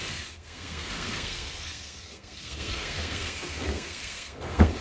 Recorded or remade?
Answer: remade